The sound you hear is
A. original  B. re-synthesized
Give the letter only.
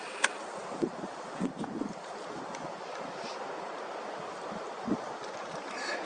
A